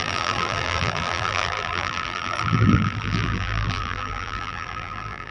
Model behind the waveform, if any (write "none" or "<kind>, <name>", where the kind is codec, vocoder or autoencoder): vocoder, BigVGAN v2